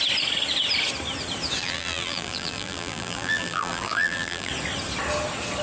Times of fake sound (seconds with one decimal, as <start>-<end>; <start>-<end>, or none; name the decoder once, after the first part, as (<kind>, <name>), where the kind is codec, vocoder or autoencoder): 1.6-4.5 (vocoder, BigVGAN v2)